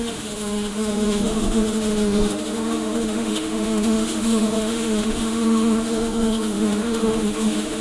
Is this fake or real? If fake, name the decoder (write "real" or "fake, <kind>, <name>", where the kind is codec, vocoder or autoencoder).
fake, autoencoder, DAC-VAE